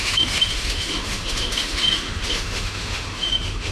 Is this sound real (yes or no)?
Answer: no